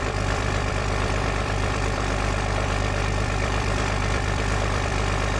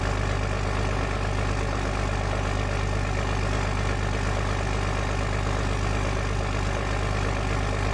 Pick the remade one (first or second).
first